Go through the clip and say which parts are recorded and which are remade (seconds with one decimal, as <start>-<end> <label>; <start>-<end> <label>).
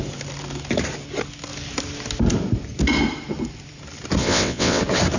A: 0.0-4.2 recorded; 4.2-4.8 remade; 4.8-5.2 recorded